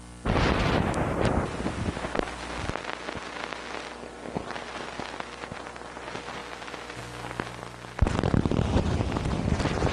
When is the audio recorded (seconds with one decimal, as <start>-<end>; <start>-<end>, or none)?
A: 0.0-9.9